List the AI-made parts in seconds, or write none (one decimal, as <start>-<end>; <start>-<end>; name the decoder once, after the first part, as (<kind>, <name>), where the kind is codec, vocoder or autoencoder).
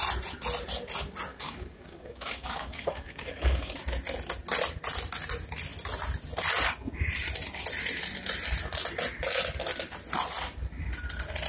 1.3-3.8 (codec, DAC)